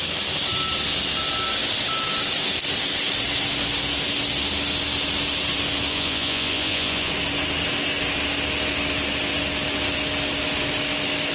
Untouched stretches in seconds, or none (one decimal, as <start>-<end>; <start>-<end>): 0.0-5.9; 7.1-11.3